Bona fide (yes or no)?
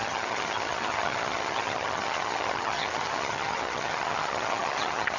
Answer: no